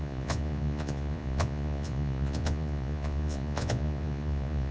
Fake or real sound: fake